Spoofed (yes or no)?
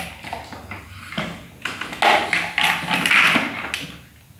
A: no